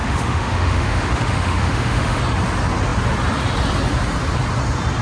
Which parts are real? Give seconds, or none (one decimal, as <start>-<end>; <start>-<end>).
2.2-5.0